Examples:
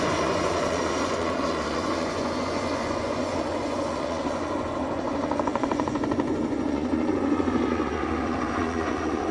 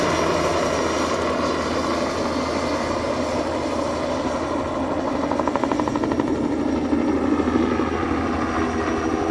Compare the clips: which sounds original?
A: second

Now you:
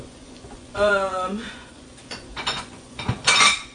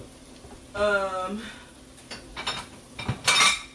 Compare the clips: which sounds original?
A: second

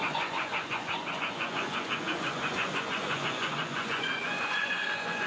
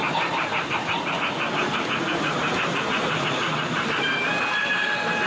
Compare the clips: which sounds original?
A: second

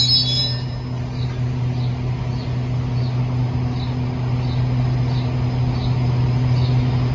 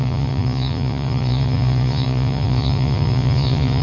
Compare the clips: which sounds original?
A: first